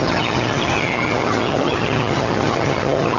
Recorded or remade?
remade